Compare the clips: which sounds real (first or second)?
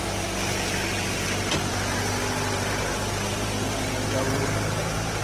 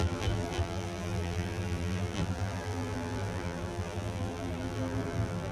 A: first